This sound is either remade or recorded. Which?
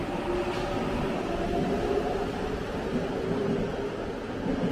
recorded